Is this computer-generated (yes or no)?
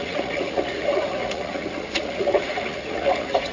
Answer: yes